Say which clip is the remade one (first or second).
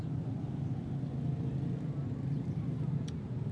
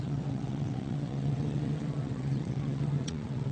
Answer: second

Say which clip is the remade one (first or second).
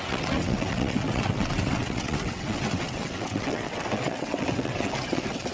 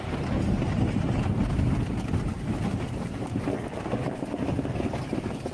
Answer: first